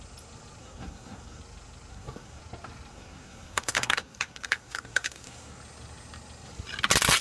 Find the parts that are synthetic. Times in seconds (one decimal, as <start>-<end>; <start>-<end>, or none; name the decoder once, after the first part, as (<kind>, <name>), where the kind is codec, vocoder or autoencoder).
0.6-1.4 (codec, SNAC); 1.9-2.4; 2.9-5.6